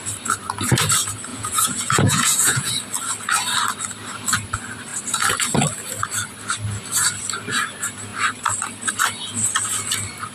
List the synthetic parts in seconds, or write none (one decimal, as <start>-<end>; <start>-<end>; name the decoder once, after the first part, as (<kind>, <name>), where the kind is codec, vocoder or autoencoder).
1.3-2.7 (vocoder, Vocos)